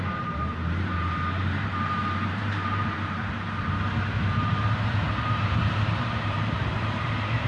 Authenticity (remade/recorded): remade